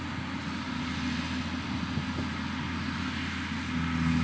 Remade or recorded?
recorded